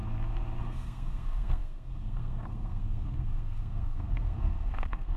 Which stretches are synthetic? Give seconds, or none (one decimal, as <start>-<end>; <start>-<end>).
0.6-5.2